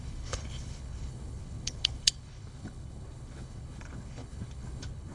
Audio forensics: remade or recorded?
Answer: remade